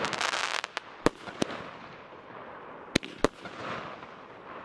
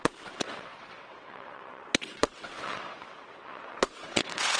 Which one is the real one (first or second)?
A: first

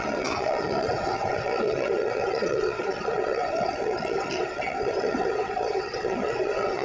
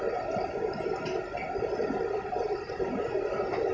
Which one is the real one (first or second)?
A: second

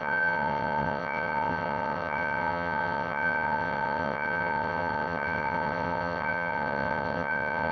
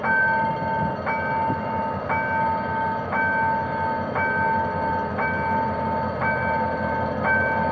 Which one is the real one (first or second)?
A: second